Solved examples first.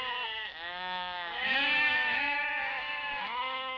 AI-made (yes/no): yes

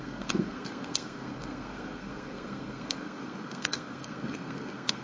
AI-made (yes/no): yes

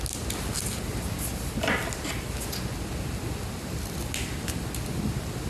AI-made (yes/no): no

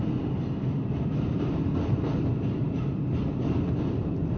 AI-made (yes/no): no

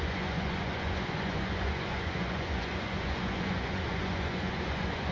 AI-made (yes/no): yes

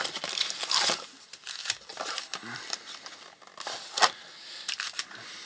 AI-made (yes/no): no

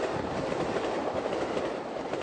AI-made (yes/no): no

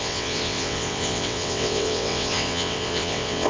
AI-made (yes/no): yes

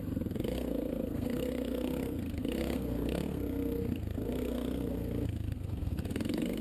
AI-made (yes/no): yes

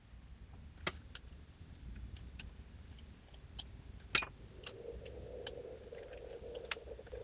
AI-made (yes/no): no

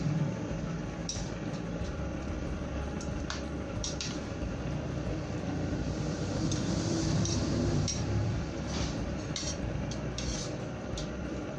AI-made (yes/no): yes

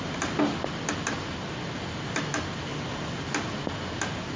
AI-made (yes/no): no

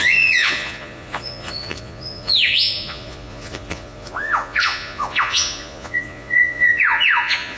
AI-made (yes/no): yes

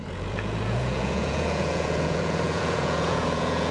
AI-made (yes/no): yes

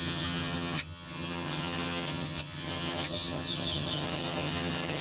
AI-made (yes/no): yes